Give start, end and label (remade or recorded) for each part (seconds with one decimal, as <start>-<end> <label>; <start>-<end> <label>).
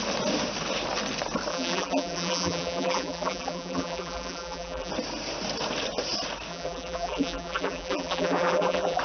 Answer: 0.0-1.5 recorded; 1.5-4.9 remade; 4.9-6.5 recorded; 6.5-9.0 remade